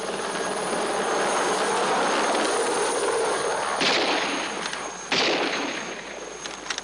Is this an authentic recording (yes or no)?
yes